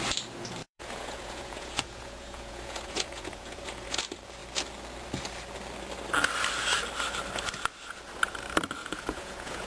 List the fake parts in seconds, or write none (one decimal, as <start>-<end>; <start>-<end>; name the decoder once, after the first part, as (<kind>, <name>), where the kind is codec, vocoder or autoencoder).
0.6-4.0 (vocoder, Vocos); 8.8-9.7